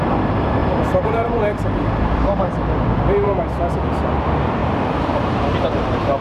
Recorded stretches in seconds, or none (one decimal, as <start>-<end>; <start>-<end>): 0.0-0.6; 3.4-4.6